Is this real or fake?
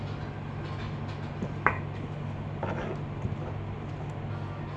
real